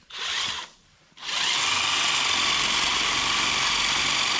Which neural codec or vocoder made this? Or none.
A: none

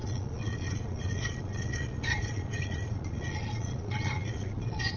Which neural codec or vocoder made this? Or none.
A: vocoder, Vocos